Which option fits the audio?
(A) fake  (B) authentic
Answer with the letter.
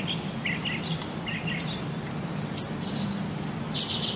B